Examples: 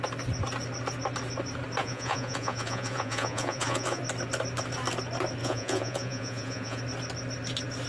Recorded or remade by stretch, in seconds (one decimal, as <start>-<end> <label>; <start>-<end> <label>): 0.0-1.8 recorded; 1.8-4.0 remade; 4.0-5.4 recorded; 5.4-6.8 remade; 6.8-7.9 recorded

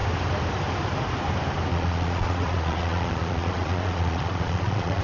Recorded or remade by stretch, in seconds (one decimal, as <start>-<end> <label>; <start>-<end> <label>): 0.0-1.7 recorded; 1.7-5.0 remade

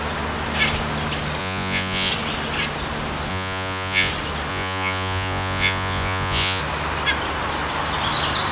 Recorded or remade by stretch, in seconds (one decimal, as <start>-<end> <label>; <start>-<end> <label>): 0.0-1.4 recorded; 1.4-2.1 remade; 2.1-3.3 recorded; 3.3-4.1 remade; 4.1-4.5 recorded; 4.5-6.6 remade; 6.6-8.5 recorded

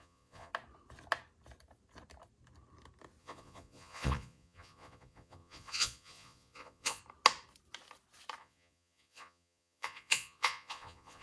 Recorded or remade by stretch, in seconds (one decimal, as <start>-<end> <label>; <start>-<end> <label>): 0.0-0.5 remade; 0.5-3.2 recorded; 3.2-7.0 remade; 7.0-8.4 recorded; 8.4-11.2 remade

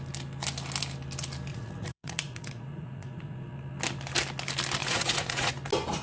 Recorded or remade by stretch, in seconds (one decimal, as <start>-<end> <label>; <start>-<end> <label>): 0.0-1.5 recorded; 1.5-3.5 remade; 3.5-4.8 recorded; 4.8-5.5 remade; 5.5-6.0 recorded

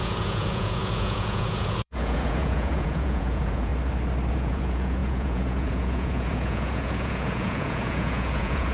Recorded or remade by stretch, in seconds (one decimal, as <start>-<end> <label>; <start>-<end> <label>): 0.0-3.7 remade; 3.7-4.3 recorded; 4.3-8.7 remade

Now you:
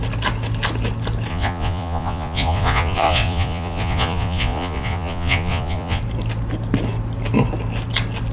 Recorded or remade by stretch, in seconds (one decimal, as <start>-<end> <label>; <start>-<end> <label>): 0.0-1.3 recorded; 1.3-6.0 remade; 6.0-8.3 recorded

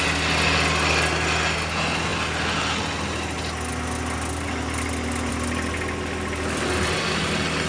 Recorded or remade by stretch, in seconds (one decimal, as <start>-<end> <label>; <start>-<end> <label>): 0.0-7.7 recorded